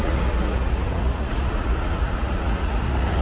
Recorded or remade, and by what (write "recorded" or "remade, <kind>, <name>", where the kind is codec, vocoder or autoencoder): remade, vocoder, Vocos